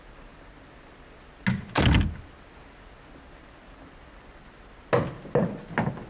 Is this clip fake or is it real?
real